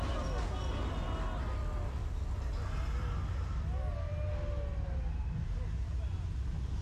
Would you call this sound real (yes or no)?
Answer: yes